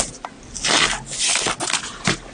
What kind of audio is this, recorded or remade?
recorded